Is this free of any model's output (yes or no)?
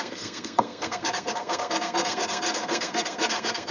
no